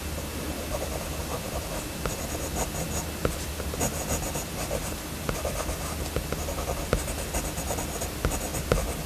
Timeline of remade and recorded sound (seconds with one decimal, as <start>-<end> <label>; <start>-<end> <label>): 0.0-8.5 recorded; 8.5-9.1 remade